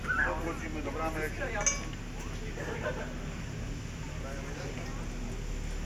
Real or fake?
real